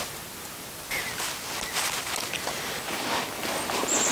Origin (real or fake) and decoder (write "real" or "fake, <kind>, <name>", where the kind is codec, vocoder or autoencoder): real